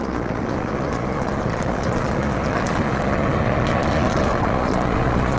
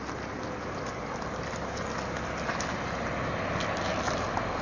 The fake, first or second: first